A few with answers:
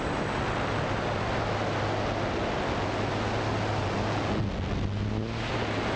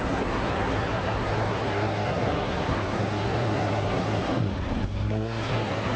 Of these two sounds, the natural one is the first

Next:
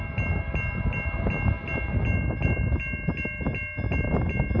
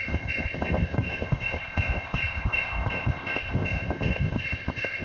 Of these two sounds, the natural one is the first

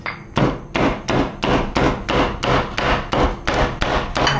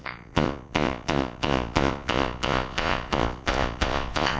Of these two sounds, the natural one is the first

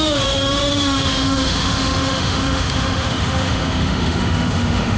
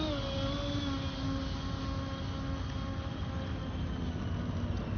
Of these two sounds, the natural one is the second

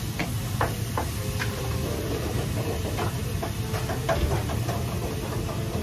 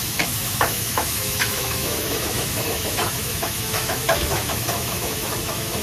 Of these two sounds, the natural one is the first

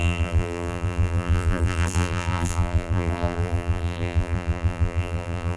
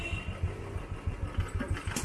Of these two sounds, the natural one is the second